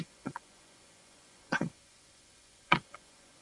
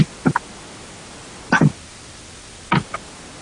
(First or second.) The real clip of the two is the second